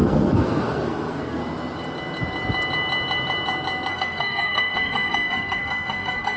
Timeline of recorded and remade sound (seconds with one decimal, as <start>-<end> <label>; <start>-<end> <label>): 0.0-1.4 remade; 1.4-3.9 recorded; 3.9-6.4 remade